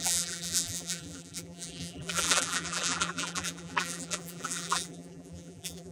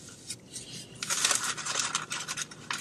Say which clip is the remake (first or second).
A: first